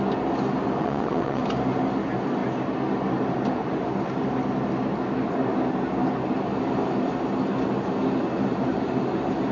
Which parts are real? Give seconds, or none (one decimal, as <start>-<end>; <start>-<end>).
0.0-0.8; 1.4-9.5